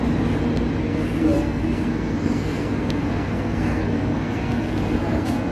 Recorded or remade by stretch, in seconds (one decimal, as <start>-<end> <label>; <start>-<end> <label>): 0.0-0.8 recorded; 0.8-5.5 remade